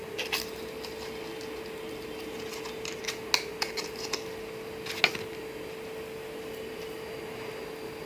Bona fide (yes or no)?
yes